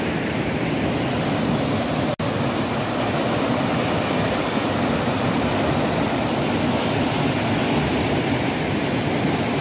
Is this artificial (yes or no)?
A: no